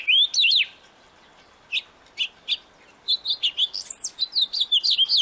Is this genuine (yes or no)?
yes